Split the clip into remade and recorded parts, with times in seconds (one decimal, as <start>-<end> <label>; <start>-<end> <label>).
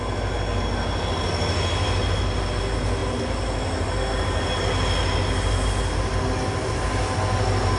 0.0-7.8 recorded